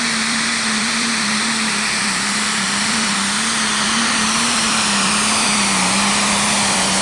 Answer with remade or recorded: remade